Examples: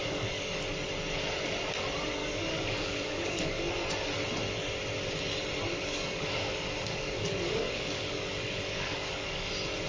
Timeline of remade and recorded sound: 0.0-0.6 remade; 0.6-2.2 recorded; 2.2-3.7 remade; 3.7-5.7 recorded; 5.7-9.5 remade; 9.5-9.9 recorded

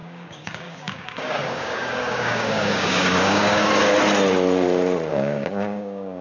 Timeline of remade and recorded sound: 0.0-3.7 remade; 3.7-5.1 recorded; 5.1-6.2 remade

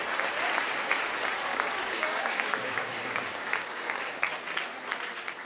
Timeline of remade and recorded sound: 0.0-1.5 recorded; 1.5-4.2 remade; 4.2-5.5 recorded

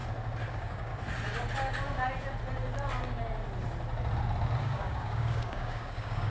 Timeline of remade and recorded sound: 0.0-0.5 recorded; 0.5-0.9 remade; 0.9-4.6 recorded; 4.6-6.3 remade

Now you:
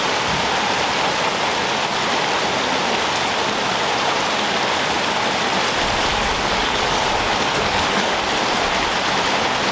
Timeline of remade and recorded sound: 0.0-6.1 recorded; 6.1-8.2 remade; 8.2-9.7 recorded